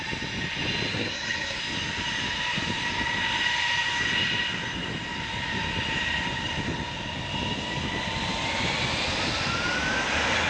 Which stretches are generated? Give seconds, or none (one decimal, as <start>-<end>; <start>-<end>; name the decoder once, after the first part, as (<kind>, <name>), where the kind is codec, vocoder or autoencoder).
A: 0.9-1.6 (codec, SNAC)